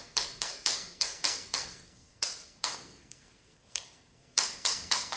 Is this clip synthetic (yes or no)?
yes